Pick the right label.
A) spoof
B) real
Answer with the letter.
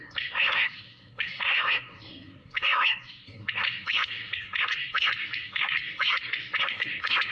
A